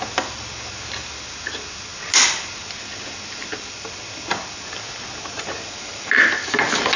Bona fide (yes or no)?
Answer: yes